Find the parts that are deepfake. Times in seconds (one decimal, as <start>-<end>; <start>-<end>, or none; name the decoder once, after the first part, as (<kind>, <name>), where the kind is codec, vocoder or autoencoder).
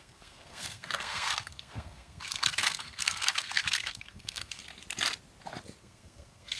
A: 0.0-4.6 (codec, SNAC); 5.8-6.6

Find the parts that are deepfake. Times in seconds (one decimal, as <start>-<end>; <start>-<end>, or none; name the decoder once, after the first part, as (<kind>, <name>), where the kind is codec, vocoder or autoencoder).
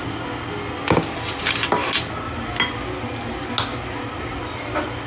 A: none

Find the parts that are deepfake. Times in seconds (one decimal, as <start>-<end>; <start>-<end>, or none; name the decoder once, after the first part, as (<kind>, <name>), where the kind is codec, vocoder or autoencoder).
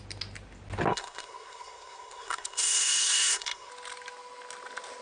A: 0.9-3.7 (codec, SNAC)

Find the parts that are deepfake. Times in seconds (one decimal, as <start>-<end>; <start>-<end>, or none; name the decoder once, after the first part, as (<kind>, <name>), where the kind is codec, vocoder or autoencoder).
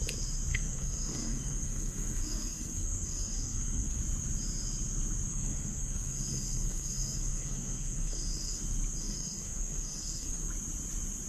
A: 0.5-4.0 (codec, SNAC); 5.3-8.6; 9.0-10.5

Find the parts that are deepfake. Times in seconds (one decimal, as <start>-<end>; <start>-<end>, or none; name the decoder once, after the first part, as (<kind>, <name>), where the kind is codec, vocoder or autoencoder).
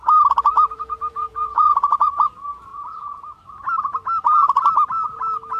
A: 0.5-2.3 (vocoder, Vocos); 2.7-3.4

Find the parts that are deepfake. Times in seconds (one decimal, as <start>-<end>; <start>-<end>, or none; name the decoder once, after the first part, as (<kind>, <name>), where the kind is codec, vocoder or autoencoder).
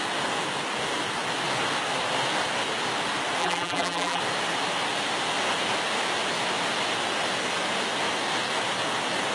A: 3.4-4.2 (vocoder, BigVGAN v2)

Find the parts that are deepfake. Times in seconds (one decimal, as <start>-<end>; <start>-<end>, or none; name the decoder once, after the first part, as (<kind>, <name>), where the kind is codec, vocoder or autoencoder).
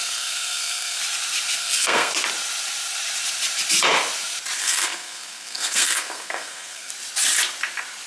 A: 0.0-1.0 (codec, SNAC); 1.6-2.1; 4.6-6.9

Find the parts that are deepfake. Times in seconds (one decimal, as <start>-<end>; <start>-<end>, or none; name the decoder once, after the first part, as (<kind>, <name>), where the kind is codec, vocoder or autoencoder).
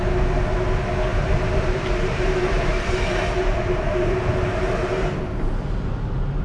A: 1.1-4.9 (vocoder, BigVGAN v2)